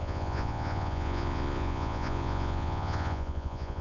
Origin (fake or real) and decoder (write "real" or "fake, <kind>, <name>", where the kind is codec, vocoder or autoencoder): fake, vocoder, Vocos